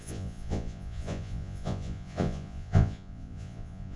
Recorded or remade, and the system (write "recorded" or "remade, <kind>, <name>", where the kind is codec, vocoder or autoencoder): remade, vocoder, Vocos